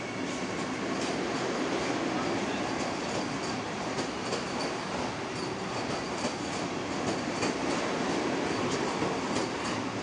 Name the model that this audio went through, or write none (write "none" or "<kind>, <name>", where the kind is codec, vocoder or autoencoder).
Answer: none